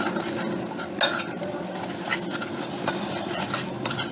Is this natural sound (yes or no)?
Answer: yes